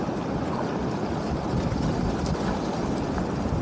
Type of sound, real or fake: real